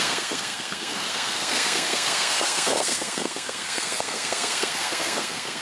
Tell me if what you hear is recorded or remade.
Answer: remade